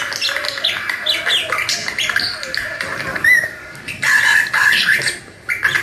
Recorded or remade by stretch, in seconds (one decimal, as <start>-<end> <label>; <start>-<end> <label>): 0.0-3.1 recorded; 3.1-3.8 remade; 3.8-5.8 recorded